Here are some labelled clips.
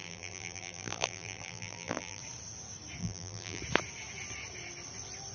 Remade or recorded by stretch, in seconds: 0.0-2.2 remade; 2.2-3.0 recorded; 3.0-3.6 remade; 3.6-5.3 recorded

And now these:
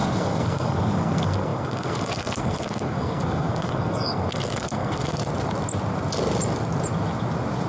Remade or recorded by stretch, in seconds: 0.0-5.2 remade; 5.2-7.7 recorded

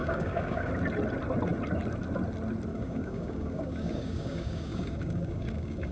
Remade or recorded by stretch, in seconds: 0.0-0.7 remade; 0.7-2.7 recorded; 2.7-5.9 remade

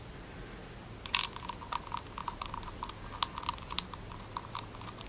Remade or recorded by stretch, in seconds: 0.0-2.2 recorded; 2.2-2.7 remade; 2.7-3.5 recorded; 3.5-4.2 remade; 4.2-5.1 recorded

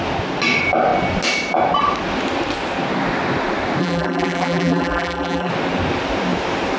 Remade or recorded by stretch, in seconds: 0.0-3.8 recorded; 3.8-5.5 remade; 5.5-6.8 recorded